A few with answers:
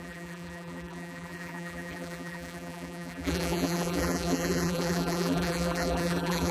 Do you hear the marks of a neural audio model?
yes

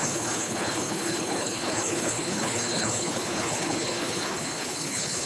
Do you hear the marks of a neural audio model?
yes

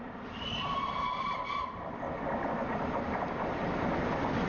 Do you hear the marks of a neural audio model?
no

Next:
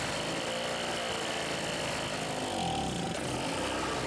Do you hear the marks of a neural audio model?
no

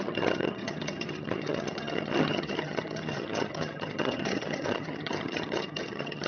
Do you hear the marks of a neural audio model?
yes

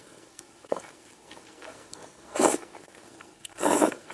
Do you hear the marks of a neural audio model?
yes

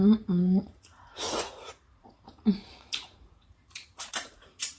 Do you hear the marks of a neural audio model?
yes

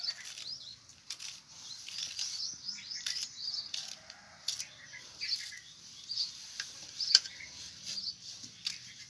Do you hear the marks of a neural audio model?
yes